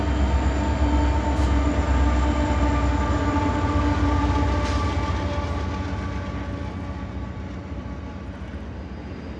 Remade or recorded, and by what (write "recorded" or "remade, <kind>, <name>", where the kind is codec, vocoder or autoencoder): recorded